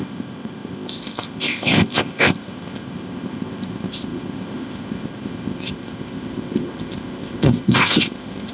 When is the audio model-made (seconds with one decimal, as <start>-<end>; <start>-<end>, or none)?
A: 0.0-8.5